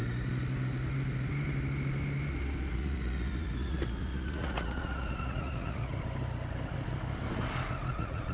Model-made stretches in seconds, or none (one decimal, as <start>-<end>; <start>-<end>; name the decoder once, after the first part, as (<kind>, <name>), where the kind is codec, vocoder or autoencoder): 2.7-5.9 (vocoder, Vocos); 7.9-8.3